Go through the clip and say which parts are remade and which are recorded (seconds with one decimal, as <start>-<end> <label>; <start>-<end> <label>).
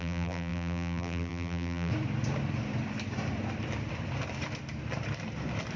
0.0-1.9 remade; 1.9-5.8 recorded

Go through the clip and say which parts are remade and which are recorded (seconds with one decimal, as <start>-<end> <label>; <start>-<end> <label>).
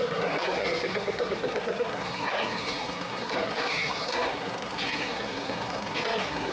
0.0-6.5 remade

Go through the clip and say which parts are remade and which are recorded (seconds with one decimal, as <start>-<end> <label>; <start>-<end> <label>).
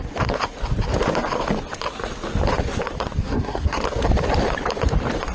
0.0-3.2 recorded; 3.2-3.8 remade; 3.8-5.3 recorded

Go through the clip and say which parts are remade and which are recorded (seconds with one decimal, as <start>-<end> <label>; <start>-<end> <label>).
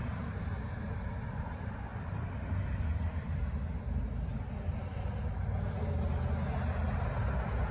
0.0-7.7 recorded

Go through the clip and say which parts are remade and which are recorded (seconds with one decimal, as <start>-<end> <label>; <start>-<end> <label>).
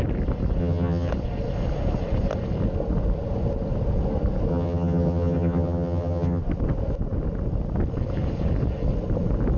0.0-0.6 recorded; 0.6-1.1 remade; 1.1-4.5 recorded; 4.5-6.4 remade; 6.4-9.6 recorded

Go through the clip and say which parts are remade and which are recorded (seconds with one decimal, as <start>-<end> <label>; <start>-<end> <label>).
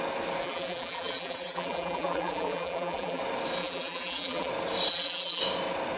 0.0-0.4 recorded; 0.4-3.2 remade; 3.2-3.6 recorded; 3.6-4.5 remade; 4.5-4.9 recorded; 4.9-5.4 remade; 5.4-6.0 recorded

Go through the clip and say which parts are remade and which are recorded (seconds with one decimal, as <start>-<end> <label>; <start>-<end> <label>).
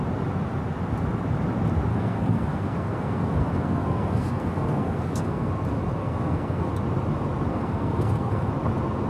0.0-1.9 recorded; 1.9-5.5 remade; 5.5-6.0 recorded; 6.0-6.7 remade; 6.7-7.5 recorded; 7.5-8.5 remade; 8.5-9.1 recorded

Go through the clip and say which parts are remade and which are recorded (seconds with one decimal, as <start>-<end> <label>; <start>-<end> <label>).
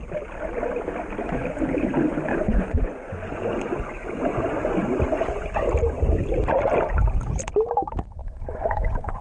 0.0-2.3 recorded; 2.3-5.5 remade; 5.5-8.2 recorded; 8.2-9.2 remade